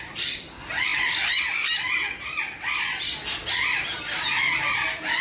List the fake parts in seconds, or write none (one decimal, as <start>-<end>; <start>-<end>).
none